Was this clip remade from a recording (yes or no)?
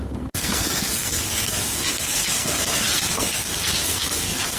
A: yes